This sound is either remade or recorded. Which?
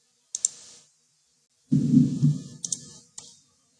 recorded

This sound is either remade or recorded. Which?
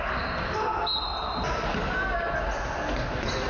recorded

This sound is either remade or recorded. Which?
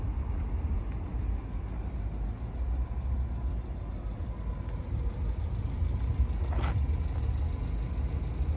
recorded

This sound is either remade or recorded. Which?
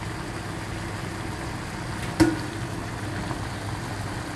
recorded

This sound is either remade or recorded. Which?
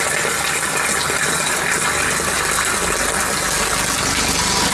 recorded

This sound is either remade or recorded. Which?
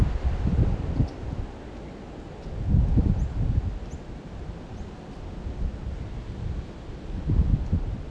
recorded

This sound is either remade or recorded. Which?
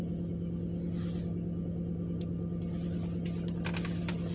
recorded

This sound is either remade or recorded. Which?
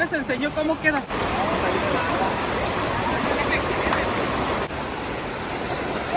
recorded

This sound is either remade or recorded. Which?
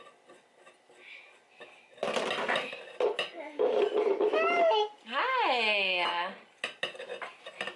recorded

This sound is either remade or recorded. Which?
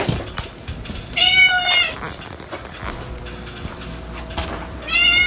recorded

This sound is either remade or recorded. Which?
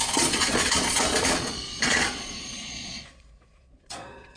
remade